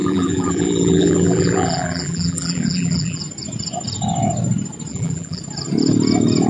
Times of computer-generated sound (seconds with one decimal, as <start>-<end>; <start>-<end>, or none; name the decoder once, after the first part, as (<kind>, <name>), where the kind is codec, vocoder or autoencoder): 0.0-3.2 (vocoder, BigVGAN v2); 4.9-5.4